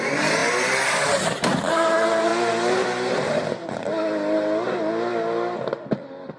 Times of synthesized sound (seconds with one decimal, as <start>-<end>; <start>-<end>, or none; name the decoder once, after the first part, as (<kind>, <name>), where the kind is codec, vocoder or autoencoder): 0.0-2.3 (vocoder, BigVGAN v2)

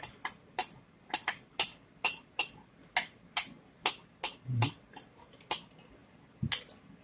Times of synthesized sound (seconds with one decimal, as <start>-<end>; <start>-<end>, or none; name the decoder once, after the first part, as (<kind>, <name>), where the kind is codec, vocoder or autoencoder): none

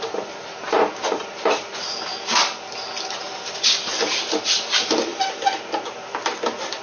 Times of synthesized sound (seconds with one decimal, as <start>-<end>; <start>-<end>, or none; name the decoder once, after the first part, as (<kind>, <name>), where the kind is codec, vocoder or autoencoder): 0.0-2.1 (vocoder, BigVGAN v2); 4.4-5.1; 5.8-6.8

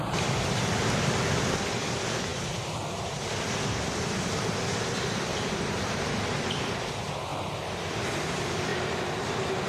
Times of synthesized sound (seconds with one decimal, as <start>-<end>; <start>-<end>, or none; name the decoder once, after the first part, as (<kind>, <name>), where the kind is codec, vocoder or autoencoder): 5.3-6.7 (vocoder, BigVGAN v2)

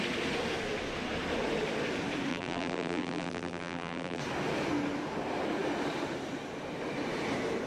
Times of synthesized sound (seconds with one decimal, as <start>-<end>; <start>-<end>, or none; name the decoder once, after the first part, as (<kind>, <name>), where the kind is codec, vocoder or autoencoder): 2.3-4.2 (vocoder, BigVGAN v2)

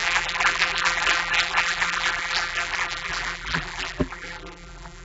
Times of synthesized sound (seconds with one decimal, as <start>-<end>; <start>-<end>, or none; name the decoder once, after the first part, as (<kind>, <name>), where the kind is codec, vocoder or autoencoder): 0.0-5.0 (vocoder, BigVGAN v2)